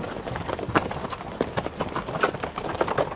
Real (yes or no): yes